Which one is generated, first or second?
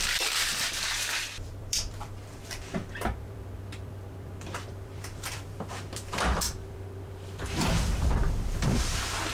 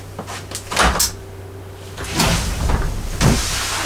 first